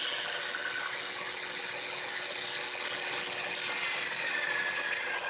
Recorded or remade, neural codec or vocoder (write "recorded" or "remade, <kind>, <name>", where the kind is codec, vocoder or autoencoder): recorded